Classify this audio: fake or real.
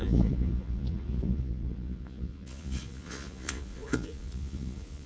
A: fake